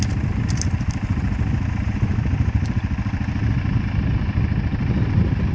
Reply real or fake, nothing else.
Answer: real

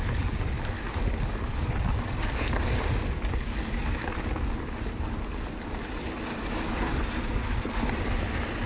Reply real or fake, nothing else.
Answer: real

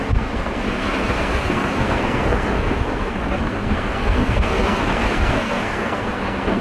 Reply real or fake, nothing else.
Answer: fake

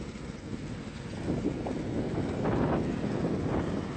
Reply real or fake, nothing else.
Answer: real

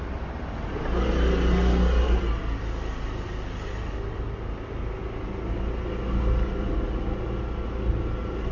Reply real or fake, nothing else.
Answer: real